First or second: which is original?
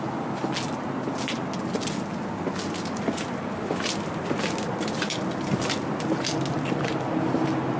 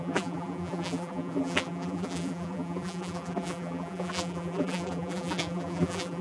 first